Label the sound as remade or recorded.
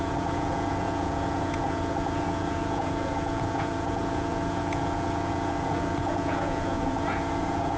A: remade